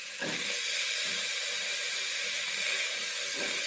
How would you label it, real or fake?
real